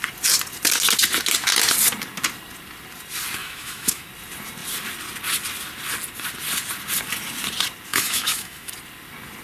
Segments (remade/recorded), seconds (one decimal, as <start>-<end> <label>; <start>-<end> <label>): 0.0-3.4 recorded; 3.4-4.1 remade; 4.1-7.9 recorded; 7.9-8.7 remade; 8.7-9.4 recorded